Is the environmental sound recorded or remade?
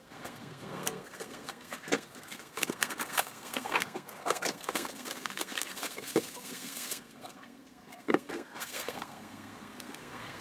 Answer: remade